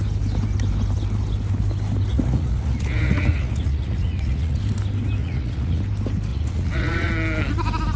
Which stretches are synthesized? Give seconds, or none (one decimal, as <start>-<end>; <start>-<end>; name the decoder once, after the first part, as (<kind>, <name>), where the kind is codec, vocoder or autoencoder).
2.1-4.6 (vocoder, Vocos); 5.2-5.8; 6.3-7.1